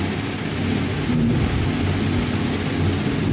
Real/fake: real